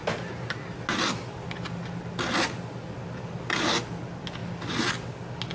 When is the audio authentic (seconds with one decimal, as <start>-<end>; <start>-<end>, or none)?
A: 0.0-5.5